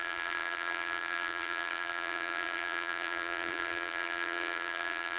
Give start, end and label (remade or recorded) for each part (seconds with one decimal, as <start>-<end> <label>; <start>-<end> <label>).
0.0-5.2 remade